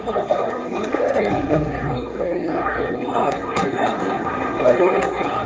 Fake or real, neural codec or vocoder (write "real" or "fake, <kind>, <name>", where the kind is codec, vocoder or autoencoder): fake, codec, SNAC